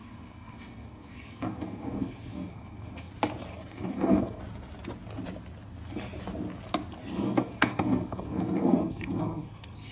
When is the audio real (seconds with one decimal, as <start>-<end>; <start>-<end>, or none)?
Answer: 3.1-3.5; 4.4-7.1